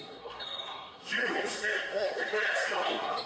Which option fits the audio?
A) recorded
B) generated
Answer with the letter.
B